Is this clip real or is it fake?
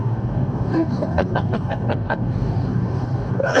fake